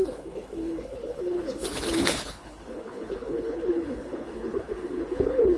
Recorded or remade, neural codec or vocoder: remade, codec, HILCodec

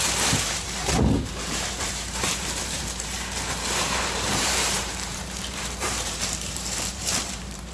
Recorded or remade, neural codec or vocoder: remade, vocoder, BigVGAN v2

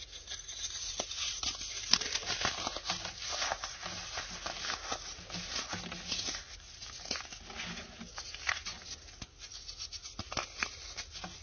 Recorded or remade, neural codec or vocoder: recorded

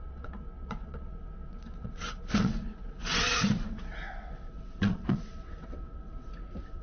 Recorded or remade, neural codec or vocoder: remade, vocoder, WaveNeXt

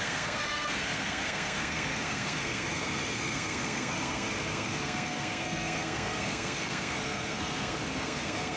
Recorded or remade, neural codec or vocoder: remade, codec, SNAC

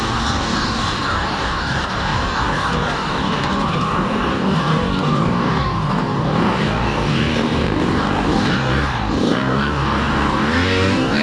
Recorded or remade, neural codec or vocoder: remade, codec, DAC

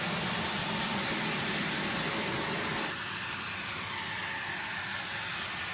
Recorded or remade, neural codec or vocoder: recorded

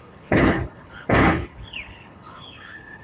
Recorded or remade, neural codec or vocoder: remade, codec, HILCodec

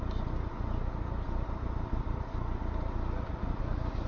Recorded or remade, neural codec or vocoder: recorded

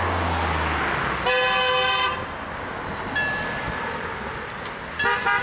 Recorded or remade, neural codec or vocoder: recorded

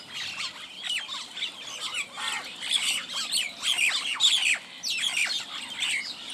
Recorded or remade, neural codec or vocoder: remade, vocoder, BigVGAN v2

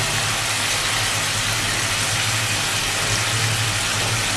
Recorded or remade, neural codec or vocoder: recorded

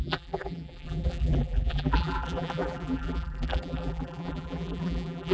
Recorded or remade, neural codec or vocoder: remade, vocoder, BigVGAN v2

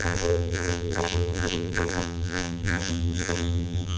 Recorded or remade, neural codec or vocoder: remade, vocoder, BigVGAN v2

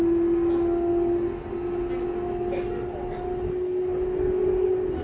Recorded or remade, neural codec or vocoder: recorded